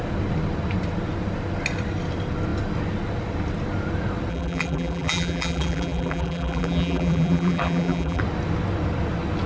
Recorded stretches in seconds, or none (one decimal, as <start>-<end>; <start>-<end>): 0.0-4.3; 8.2-9.5

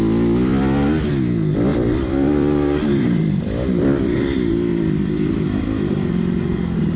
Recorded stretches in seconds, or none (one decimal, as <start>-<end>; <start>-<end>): 0.0-0.4; 1.1-1.7; 4.2-4.7

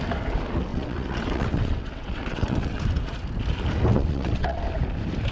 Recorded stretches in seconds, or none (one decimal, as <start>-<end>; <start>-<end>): 0.0-0.7; 2.8-3.9; 4.6-5.3